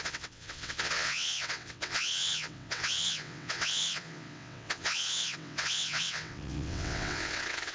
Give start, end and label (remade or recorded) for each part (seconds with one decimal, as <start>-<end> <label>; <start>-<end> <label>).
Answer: 0.0-7.7 remade